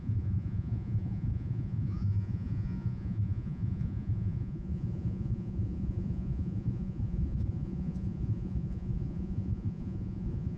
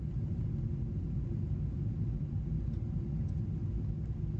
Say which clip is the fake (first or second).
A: first